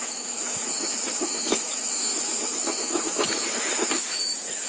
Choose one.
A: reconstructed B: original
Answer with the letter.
A